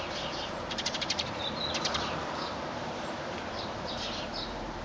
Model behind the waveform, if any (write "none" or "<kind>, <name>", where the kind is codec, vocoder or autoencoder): vocoder, BigVGAN v2